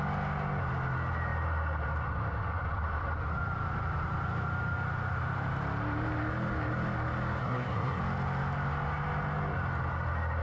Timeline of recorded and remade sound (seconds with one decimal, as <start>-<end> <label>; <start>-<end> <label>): 0.0-7.4 recorded; 7.4-8.0 remade; 8.0-10.4 recorded